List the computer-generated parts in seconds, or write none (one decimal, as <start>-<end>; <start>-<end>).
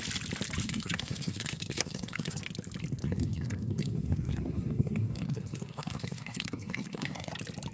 0.6-2.4; 3.0-7.3